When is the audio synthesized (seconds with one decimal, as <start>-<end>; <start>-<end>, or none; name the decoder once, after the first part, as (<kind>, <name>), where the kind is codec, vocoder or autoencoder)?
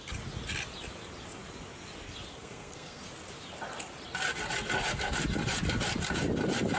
2.3-3.0 (codec, SNAC)